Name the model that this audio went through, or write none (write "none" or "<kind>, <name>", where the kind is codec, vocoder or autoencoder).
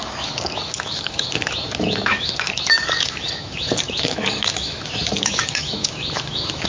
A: autoencoder, DAC-VAE